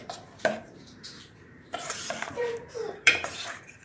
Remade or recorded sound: remade